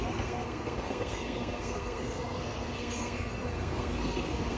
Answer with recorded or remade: remade